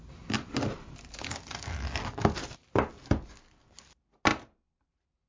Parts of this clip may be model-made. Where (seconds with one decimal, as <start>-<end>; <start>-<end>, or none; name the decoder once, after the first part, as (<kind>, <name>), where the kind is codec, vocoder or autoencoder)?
none